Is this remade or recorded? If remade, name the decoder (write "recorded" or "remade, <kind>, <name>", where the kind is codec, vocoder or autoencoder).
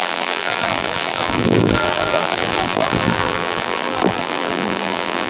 remade, vocoder, BigVGAN v2